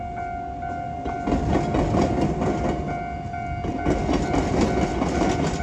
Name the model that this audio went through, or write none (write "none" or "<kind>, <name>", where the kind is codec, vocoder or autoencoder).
none